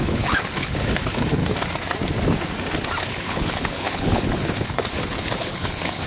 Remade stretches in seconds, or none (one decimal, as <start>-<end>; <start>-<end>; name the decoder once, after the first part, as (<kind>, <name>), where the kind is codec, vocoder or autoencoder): 0.0-1.4 (codec, HILCodec); 3.1-6.1